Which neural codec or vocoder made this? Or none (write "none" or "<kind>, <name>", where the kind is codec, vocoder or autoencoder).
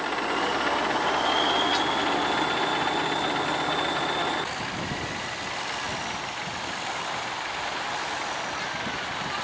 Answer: none